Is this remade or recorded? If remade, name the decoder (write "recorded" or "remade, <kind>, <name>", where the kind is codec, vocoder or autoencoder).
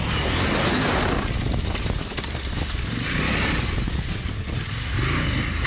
recorded